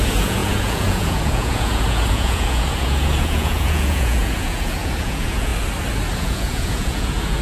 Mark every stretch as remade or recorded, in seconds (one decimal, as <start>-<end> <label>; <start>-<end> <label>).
0.0-5.5 remade; 5.5-6.2 recorded; 6.2-7.4 remade